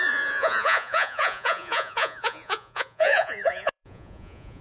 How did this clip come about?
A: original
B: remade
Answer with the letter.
B